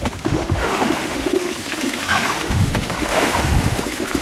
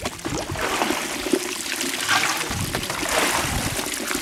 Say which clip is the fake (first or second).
first